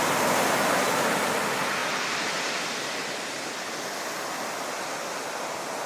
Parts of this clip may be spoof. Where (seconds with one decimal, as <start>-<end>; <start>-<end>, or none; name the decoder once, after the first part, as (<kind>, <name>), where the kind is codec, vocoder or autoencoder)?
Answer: none